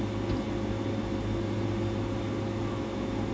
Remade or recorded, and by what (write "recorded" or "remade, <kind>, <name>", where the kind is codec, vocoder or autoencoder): recorded